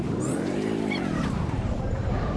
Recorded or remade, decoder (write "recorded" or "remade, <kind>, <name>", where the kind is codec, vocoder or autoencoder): remade, vocoder, BigVGAN v2